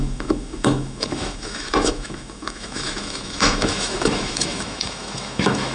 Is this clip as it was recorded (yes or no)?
no